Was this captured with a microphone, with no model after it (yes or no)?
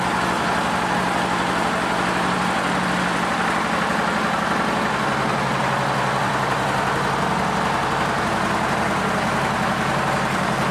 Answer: yes